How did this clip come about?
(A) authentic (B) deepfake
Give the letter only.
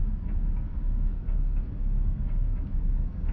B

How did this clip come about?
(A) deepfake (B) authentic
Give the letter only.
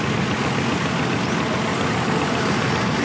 B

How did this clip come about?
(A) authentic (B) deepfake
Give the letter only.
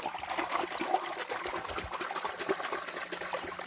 A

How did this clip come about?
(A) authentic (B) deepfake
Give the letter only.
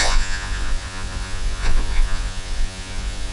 B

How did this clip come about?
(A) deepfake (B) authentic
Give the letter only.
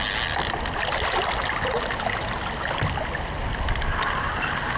B